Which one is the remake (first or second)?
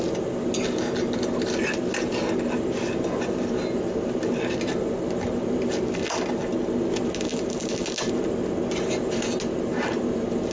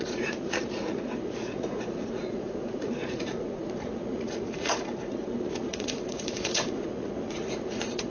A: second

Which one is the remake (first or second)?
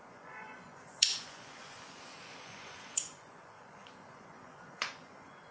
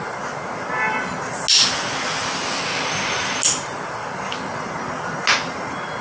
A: first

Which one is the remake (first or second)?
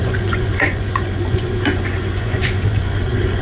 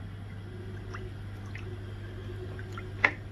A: first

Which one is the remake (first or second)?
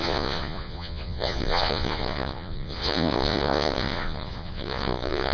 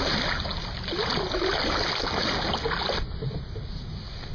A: first